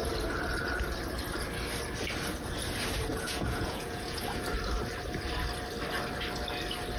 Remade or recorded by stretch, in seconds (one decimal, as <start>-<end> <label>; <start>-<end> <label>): 0.0-3.1 recorded; 3.1-4.2 remade; 4.2-7.0 recorded